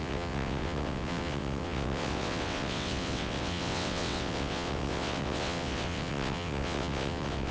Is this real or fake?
fake